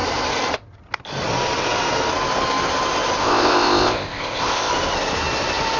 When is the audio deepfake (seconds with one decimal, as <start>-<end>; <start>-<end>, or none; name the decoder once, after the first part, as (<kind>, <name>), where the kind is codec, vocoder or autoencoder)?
3.2-4.7 (codec, ZipCodec)